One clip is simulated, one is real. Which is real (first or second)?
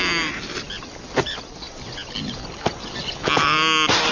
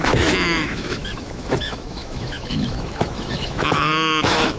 first